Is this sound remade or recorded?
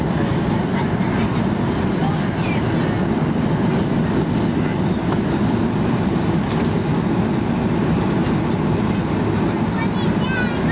recorded